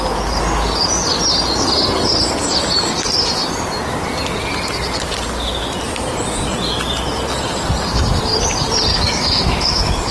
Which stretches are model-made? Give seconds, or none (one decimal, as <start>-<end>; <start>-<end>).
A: 8.9-10.1